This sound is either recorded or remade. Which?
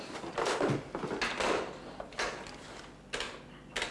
recorded